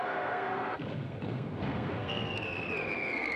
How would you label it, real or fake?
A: fake